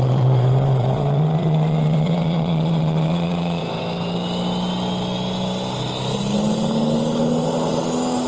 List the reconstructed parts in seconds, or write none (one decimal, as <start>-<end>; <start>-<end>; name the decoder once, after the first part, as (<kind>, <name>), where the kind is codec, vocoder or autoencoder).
0.0-3.6 (vocoder, Vocos)

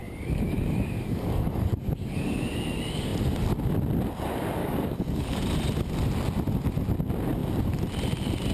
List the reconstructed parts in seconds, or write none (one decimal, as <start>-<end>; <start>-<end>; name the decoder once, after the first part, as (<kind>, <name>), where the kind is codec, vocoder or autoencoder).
0.0-2.5 (codec, DAC); 4.6-5.4

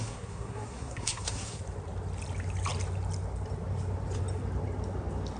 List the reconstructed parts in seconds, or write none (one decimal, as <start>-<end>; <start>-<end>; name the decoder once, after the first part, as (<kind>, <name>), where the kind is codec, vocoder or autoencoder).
0.0-1.6 (codec, SNAC)

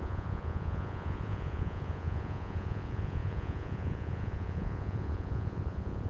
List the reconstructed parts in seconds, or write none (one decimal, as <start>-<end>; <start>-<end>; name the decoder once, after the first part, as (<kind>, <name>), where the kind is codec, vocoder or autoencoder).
0.0-6.1 (vocoder, Vocos)

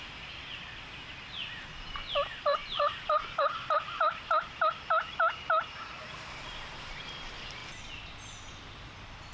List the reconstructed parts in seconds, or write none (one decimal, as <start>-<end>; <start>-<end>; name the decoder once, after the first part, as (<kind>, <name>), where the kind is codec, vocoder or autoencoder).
0.0-7.6 (vocoder, BigVGAN v2); 8.5-9.3

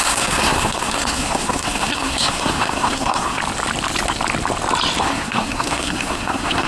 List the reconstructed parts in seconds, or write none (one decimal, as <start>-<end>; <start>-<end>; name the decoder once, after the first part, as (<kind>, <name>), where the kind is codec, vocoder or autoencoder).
0.0-3.4 (codec, SNAC); 5.0-6.7